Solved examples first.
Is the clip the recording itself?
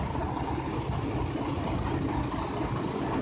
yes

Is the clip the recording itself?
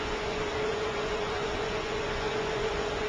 no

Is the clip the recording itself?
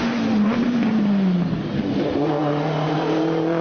yes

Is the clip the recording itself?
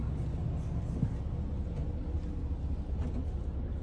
yes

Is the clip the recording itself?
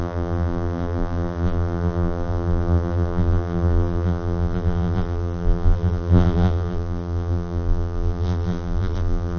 no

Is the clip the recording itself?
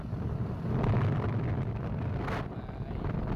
yes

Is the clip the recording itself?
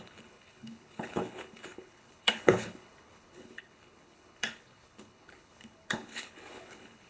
no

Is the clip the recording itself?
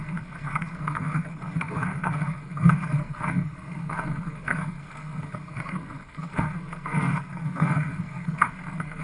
no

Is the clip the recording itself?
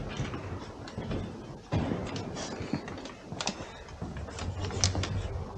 yes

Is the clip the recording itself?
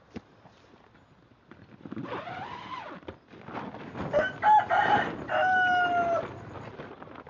yes